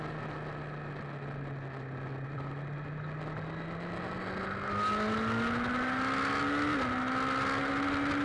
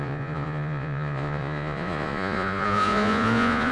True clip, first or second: first